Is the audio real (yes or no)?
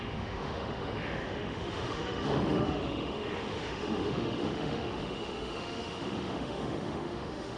no